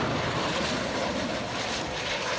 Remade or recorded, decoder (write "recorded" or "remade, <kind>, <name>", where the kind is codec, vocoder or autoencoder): remade, vocoder, BigVGAN v2